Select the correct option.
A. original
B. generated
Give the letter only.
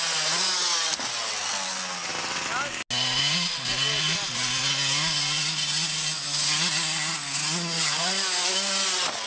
A